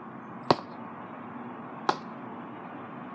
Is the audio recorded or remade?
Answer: recorded